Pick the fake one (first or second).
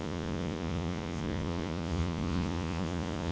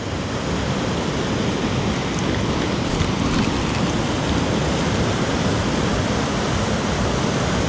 first